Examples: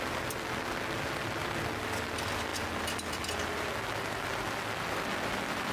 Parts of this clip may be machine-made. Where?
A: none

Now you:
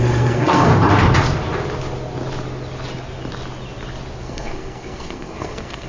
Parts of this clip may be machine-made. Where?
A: 0.0-0.7; 4.2-5.9

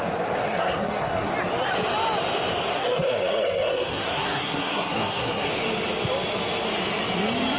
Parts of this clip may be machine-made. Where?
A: 0.4-1.3; 2.7-5.5

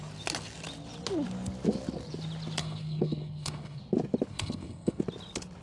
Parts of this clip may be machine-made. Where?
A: 2.6-3.8; 4.3-5.0

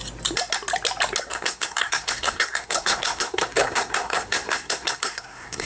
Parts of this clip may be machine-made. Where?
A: 1.2-5.7

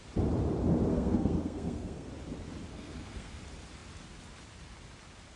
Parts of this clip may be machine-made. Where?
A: 0.9-2.1; 2.7-3.4

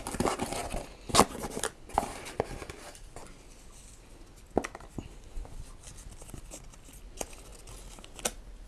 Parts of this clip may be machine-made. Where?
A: none